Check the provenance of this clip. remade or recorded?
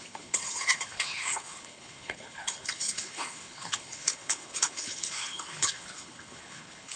remade